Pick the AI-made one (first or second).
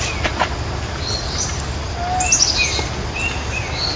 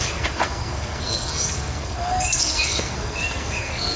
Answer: second